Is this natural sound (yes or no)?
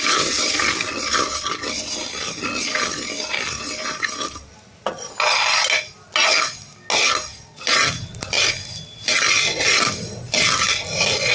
yes